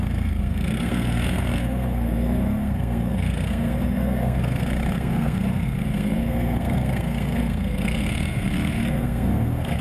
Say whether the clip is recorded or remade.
remade